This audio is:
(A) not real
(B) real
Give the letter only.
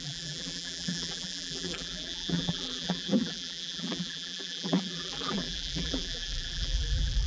A